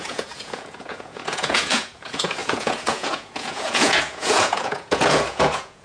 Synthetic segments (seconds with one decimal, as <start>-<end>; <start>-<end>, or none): 0.0-5.8